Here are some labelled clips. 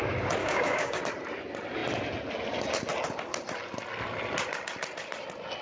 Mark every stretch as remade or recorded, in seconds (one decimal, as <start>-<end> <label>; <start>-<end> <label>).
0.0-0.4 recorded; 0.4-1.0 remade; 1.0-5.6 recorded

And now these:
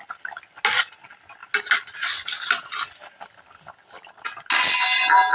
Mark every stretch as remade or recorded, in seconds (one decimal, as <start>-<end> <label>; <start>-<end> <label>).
0.0-5.3 recorded

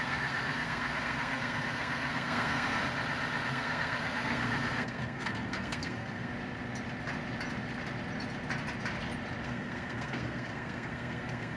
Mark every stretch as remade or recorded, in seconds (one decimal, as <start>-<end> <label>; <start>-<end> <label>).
0.0-2.8 remade; 2.8-3.5 recorded; 3.5-6.3 remade; 6.3-9.4 recorded; 9.4-11.6 remade

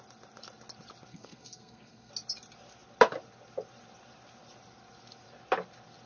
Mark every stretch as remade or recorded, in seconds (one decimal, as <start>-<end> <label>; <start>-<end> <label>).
0.0-1.1 recorded; 1.1-2.1 remade; 2.1-6.1 recorded

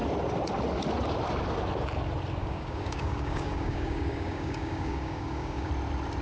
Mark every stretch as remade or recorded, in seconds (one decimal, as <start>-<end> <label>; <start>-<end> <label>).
0.0-2.4 recorded; 2.4-5.7 remade; 5.7-6.2 recorded

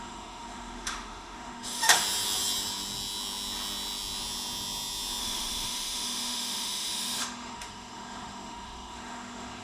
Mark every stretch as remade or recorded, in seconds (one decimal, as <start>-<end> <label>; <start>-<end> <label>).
0.0-2.0 remade; 2.0-5.2 recorded; 5.2-9.6 remade

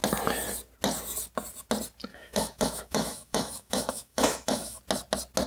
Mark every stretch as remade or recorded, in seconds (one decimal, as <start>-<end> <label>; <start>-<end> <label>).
0.0-2.1 recorded; 2.1-4.8 remade; 4.8-5.5 recorded

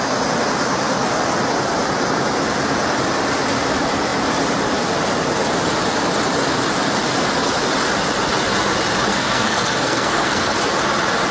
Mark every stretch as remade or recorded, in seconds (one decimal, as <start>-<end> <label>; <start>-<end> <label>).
0.0-9.1 recorded; 9.1-10.6 remade; 10.6-11.3 recorded